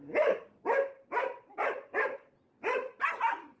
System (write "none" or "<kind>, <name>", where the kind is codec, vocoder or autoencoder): none